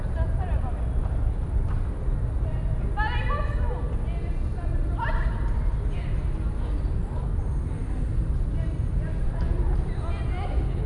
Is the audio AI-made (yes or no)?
no